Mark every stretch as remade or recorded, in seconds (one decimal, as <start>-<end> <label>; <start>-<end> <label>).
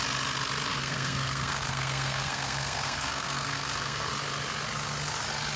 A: 0.0-0.7 recorded; 0.7-4.1 remade; 4.1-5.6 recorded